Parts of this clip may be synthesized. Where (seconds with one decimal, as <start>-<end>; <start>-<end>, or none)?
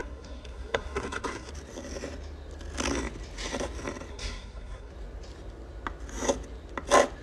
0.0-1.5; 4.1-4.9